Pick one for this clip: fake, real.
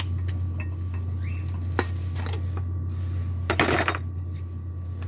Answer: real